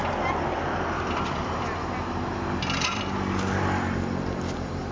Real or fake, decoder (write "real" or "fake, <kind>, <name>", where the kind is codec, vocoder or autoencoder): real